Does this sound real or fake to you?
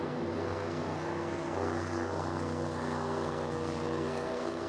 fake